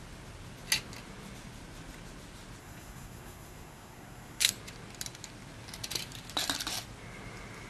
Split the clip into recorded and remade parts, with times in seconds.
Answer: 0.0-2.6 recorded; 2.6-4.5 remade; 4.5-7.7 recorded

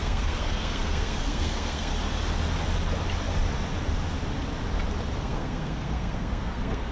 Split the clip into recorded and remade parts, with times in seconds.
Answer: 0.0-1.9 remade; 1.9-5.2 recorded; 5.2-6.9 remade

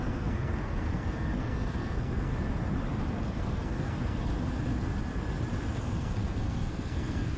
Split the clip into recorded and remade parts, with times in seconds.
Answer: 0.0-2.3 remade; 2.3-3.1 recorded; 3.1-4.3 remade; 4.3-5.8 recorded; 5.8-7.4 remade

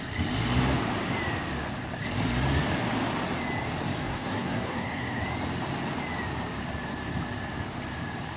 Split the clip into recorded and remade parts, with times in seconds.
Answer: 0.0-4.0 recorded; 4.0-5.2 remade; 5.2-8.4 recorded

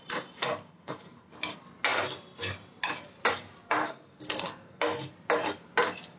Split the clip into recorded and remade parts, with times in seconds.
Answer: 0.0-0.7 recorded; 0.7-1.3 remade; 1.3-3.8 recorded; 3.8-4.8 remade; 4.8-6.2 recorded

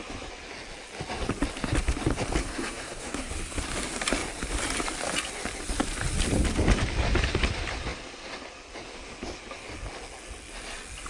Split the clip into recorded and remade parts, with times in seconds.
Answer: 0.0-2.4 recorded; 2.4-3.3 remade; 3.3-11.1 recorded

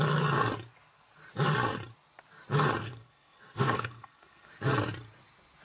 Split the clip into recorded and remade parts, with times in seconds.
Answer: 0.0-2.8 recorded; 2.8-4.5 remade; 4.5-5.6 recorded

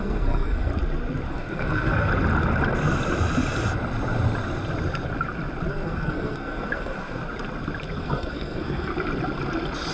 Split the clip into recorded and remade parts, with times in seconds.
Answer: 0.0-0.7 remade; 0.7-1.3 recorded; 1.3-2.1 remade; 2.1-5.7 recorded; 5.7-7.2 remade; 7.2-8.0 recorded; 8.0-8.9 remade; 8.9-9.9 recorded